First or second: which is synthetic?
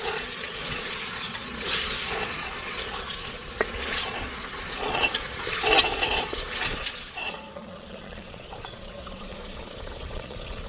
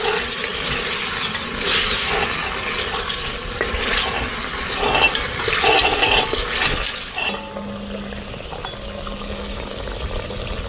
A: first